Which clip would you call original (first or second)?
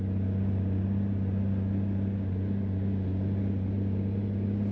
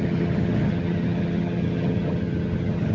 first